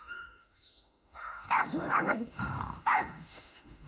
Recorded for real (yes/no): no